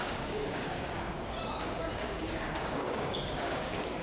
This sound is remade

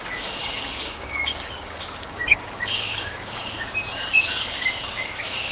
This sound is remade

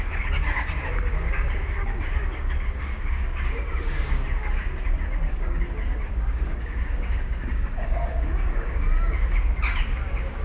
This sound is remade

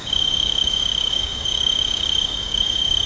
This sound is remade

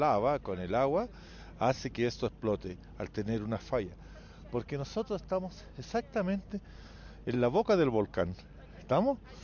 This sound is recorded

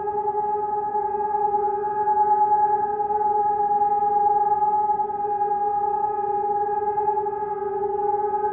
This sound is recorded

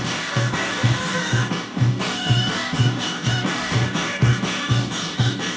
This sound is remade